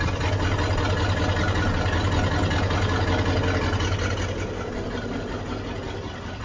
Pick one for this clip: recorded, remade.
recorded